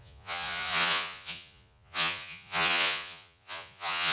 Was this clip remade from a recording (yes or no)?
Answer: yes